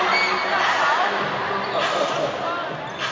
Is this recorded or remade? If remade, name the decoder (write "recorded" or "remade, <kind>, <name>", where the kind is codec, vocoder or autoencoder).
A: recorded